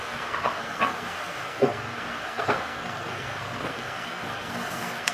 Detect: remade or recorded remade